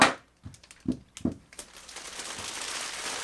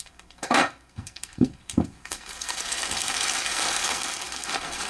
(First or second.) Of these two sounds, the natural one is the first